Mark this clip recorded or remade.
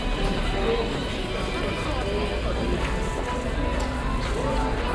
recorded